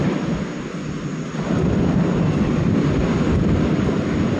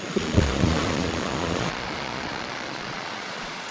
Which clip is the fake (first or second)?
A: second